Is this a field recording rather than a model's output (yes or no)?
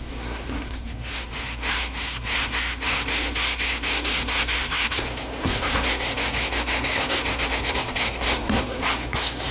no